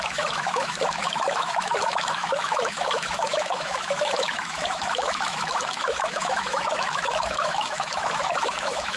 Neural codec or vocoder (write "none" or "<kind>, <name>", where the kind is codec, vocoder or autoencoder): autoencoder, DAC-VAE